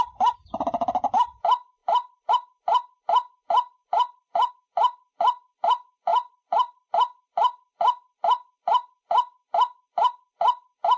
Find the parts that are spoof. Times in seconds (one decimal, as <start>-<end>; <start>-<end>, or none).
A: 1.8-2.3; 3.8-4.5; 6.1-6.9